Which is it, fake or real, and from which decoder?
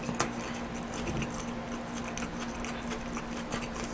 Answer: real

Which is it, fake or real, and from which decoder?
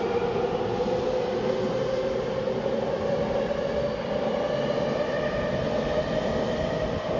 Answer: real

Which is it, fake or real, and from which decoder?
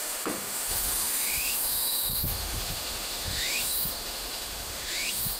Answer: fake, autoencoder, DAC-VAE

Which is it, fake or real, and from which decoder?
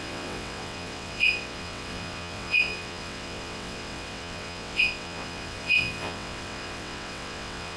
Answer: fake, vocoder, WaveNeXt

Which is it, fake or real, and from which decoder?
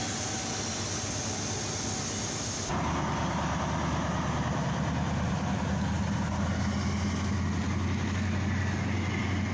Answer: real